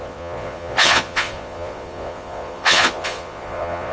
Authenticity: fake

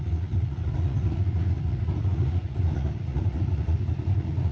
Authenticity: fake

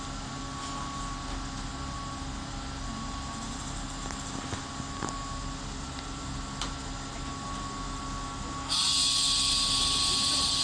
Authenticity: real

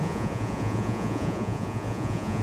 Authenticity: fake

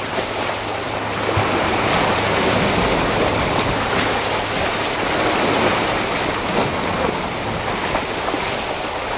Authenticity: real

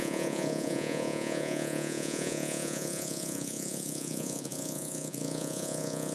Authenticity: fake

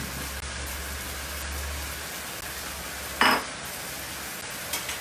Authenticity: real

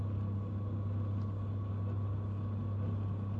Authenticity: real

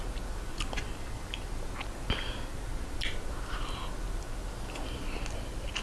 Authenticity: real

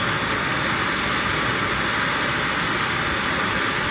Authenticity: real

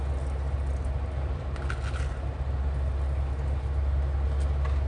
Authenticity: real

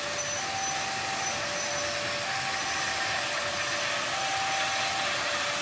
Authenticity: real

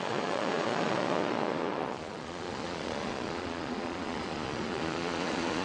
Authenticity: fake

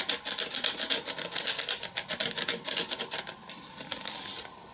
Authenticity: real